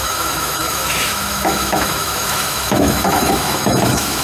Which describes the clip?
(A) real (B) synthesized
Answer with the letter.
B